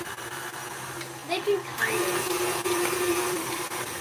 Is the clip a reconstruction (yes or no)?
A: no